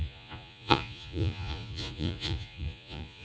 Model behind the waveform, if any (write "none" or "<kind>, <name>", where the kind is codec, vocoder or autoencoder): vocoder, Vocos